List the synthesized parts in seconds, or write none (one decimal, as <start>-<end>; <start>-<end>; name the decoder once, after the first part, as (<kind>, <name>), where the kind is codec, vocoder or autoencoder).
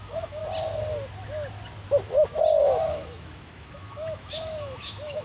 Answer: 0.0-0.4 (autoencoder, DAC-VAE); 2.6-5.2